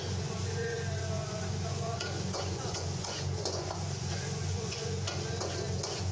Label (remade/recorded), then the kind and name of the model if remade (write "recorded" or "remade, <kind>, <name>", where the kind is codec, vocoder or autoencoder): remade, vocoder, Vocos